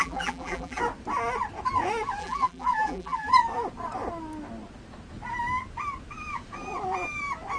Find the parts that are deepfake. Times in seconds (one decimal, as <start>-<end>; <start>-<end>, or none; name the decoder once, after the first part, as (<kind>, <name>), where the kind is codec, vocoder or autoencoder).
0.0-0.8 (vocoder, BigVGAN v2); 2.2-3.3